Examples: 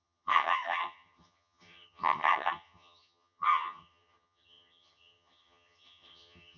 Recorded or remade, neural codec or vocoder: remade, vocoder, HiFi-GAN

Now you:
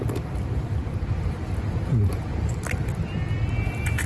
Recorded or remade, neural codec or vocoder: recorded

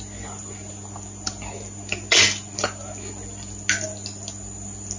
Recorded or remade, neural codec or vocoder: recorded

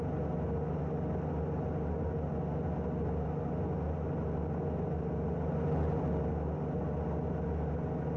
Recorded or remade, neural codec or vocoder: recorded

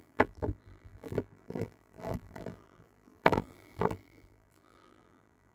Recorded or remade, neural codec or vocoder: remade, vocoder, BigVGAN v2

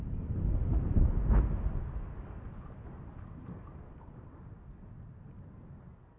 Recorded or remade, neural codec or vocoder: recorded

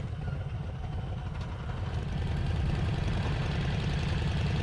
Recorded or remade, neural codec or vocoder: recorded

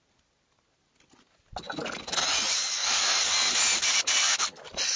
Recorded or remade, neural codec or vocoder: recorded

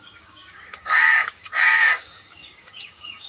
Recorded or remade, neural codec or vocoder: remade, codec, DAC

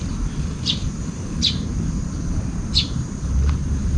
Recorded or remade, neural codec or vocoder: remade, vocoder, BigVGAN v2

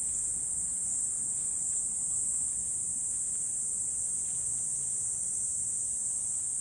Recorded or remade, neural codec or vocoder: recorded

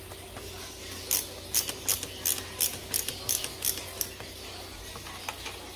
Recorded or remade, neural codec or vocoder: recorded